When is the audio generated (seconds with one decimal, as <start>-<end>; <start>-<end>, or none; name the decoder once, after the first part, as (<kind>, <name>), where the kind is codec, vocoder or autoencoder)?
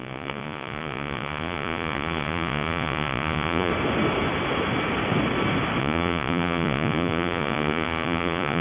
0.0-3.7 (vocoder, Vocos); 5.8-8.6